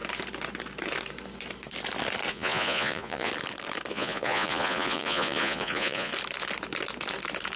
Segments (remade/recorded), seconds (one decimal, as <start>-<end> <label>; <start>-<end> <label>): 0.0-2.3 recorded; 2.3-3.3 remade; 3.3-3.9 recorded; 3.9-6.1 remade; 6.1-7.6 recorded